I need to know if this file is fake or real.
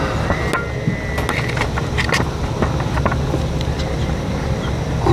real